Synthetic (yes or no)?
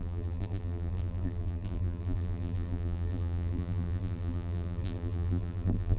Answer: yes